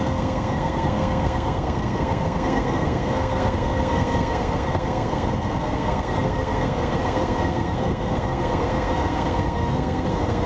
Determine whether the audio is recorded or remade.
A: remade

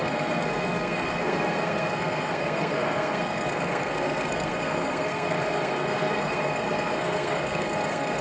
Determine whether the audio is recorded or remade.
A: remade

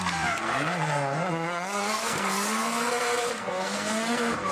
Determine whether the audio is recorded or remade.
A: remade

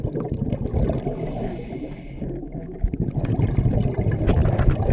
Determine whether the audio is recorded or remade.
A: recorded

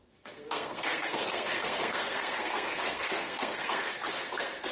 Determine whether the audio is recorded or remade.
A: remade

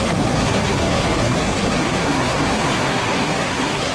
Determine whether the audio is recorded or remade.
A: remade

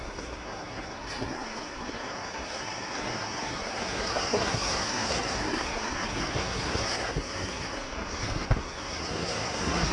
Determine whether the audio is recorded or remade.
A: remade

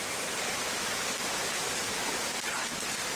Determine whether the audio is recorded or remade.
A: recorded